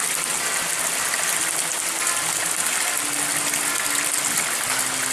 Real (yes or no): yes